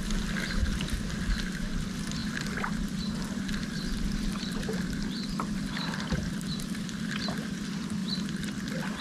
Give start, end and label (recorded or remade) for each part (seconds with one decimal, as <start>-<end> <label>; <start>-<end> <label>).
0.0-2.2 recorded; 2.2-7.1 remade; 7.1-9.0 recorded